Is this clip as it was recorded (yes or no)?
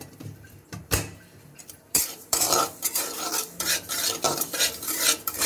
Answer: no